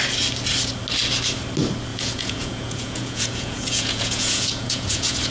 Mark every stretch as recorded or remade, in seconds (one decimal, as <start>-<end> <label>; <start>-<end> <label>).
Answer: 0.0-1.9 recorded; 1.9-5.3 remade